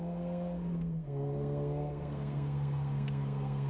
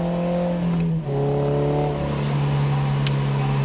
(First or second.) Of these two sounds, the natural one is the second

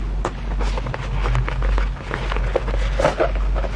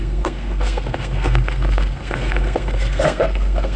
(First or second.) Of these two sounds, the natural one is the first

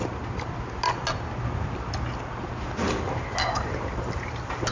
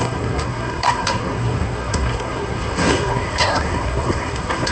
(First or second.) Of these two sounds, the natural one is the first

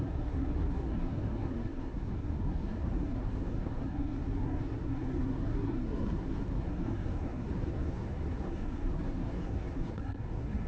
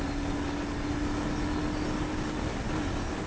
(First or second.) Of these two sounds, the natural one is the second